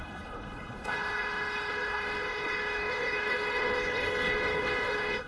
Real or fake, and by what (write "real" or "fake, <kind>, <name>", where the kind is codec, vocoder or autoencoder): fake, codec, HILCodec